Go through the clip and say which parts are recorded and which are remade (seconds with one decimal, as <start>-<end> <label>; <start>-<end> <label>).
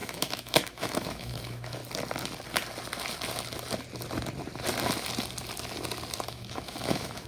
0.0-1.8 remade; 1.8-6.2 recorded; 6.2-7.3 remade